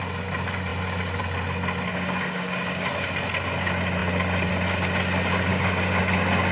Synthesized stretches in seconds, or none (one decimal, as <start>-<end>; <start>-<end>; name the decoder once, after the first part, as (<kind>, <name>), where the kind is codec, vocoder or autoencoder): 1.9-2.9 (codec, DAC); 5.5-6.0